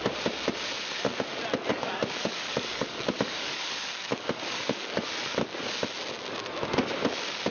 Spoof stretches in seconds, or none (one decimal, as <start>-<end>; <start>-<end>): 1.7-5.0